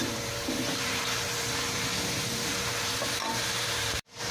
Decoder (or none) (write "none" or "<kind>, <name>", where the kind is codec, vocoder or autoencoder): vocoder, BigVGAN v2